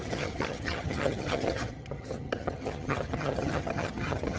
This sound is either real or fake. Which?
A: fake